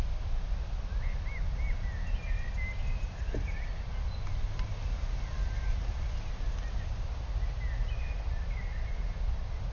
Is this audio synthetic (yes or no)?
no